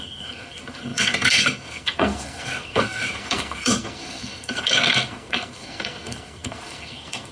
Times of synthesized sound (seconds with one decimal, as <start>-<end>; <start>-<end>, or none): 0.0-7.3